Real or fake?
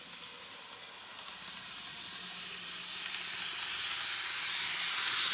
real